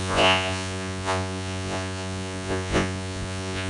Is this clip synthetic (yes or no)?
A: yes